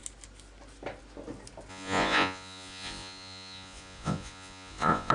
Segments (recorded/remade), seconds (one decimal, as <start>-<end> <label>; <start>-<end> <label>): 0.0-1.7 recorded; 1.7-5.1 remade